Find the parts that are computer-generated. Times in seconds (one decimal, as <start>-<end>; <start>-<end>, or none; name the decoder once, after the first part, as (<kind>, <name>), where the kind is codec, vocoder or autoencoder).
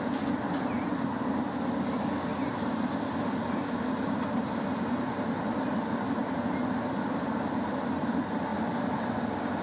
none